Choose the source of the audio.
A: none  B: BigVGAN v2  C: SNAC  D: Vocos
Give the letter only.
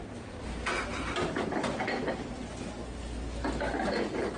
A